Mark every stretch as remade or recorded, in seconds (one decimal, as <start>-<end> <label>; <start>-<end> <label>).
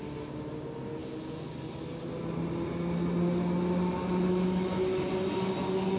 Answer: 0.0-6.0 recorded